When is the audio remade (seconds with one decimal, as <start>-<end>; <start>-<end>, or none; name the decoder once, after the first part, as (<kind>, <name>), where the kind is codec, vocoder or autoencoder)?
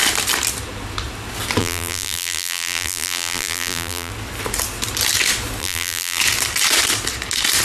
1.6-4.1 (vocoder, BigVGAN v2); 5.6-6.2